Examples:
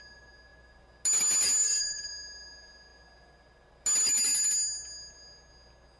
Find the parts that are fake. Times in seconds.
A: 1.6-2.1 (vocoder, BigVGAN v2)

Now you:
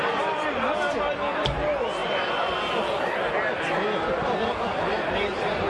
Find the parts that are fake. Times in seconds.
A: none

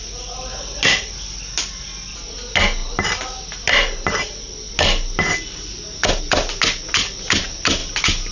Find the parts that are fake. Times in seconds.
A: none